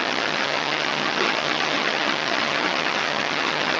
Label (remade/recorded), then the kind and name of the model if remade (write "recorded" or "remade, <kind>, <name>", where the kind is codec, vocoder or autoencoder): remade, vocoder, HiFi-GAN